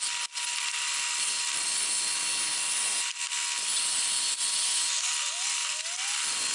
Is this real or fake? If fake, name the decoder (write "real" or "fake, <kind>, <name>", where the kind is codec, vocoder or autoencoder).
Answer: real